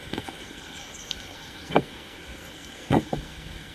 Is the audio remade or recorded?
remade